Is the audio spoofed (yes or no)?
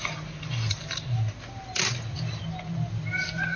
no